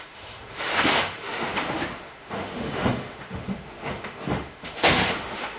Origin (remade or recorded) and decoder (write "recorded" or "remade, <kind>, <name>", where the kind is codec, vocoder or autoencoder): remade, autoencoder, DAC-VAE